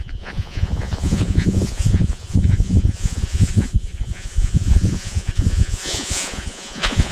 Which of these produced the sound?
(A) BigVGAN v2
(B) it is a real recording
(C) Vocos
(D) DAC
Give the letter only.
C